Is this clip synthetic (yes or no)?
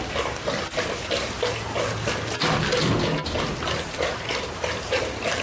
no